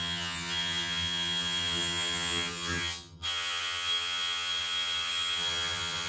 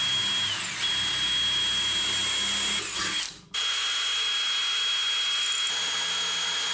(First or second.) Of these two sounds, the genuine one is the second